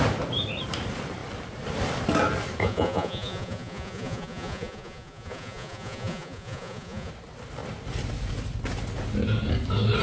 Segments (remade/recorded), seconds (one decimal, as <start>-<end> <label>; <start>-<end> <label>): 0.0-2.6 recorded; 2.6-7.1 remade; 7.1-10.0 recorded